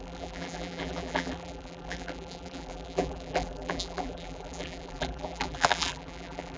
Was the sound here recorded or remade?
remade